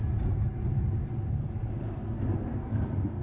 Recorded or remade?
recorded